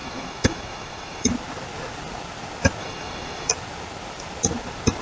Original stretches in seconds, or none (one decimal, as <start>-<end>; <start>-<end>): 1.3-2.8; 3.5-5.0